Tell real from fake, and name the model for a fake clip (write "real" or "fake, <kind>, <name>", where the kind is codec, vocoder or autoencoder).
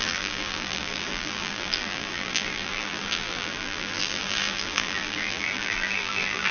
fake, vocoder, BigVGAN v2